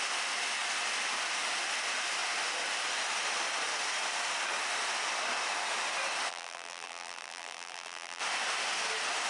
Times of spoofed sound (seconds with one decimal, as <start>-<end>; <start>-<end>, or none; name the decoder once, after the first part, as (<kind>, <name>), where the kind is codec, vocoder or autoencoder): 6.3-8.2 (vocoder, BigVGAN v2)